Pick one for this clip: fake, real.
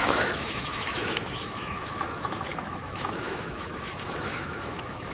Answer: fake